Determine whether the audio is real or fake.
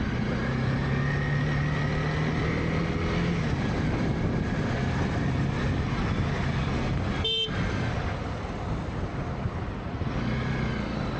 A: real